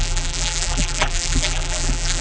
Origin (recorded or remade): remade